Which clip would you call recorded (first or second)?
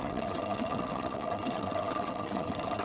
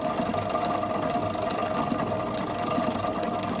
second